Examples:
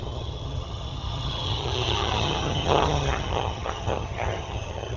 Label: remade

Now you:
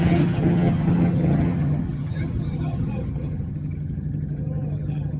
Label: remade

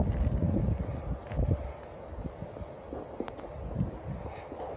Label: recorded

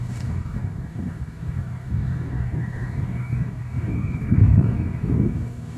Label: remade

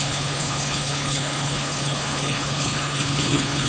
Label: remade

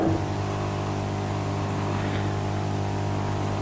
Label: recorded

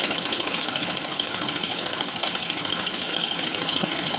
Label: remade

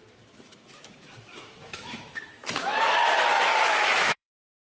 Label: remade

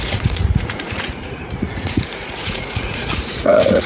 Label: remade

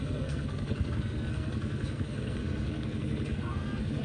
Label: remade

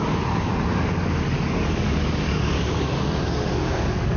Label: remade